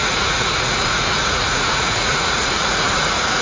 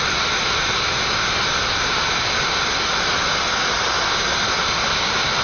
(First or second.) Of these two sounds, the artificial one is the first